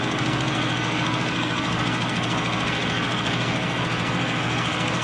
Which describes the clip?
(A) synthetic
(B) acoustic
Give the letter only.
A